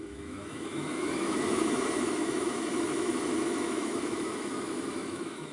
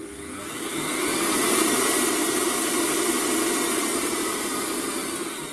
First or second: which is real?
second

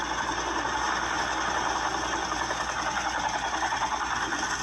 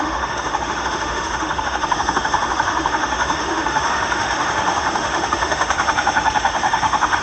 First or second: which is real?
first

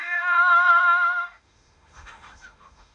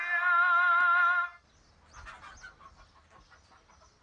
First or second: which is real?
second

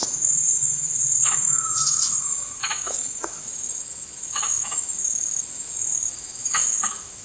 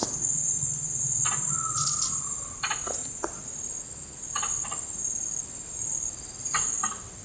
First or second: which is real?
second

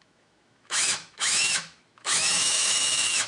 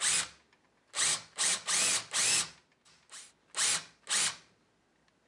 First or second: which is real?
second